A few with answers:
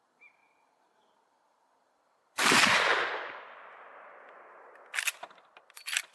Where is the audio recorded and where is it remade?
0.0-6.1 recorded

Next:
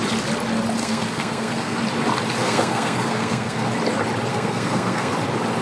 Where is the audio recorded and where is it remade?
0.0-0.8 recorded; 0.8-1.8 remade; 1.8-2.4 recorded; 2.4-3.7 remade; 3.7-4.3 recorded; 4.3-5.1 remade; 5.1-5.6 recorded

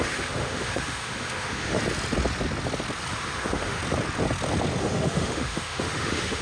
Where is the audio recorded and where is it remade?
0.0-1.8 remade; 1.8-3.1 recorded; 3.1-3.8 remade; 3.8-4.8 recorded; 4.8-6.4 remade

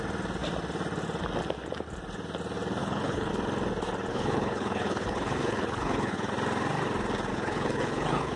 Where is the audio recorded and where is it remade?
0.0-2.8 recorded; 2.8-3.3 remade; 3.3-4.1 recorded; 4.1-6.3 remade; 6.3-7.3 recorded; 7.3-8.4 remade